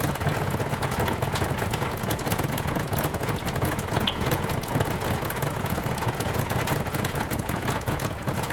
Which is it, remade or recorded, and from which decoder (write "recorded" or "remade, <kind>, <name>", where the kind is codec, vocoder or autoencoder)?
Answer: remade, vocoder, Vocos